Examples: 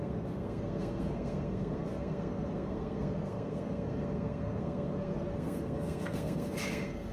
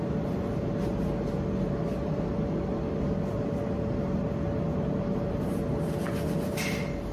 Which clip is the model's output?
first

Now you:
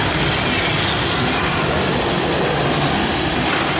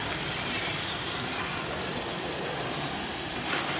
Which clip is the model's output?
second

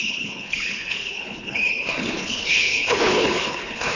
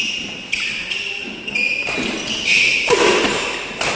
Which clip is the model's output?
first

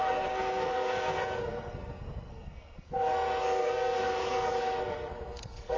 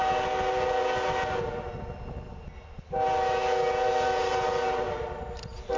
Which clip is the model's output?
first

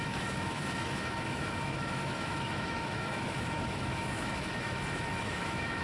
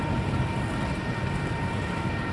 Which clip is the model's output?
first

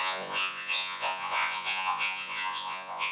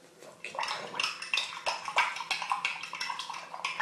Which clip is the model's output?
first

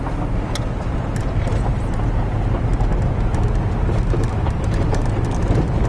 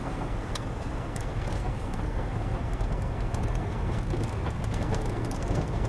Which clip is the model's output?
second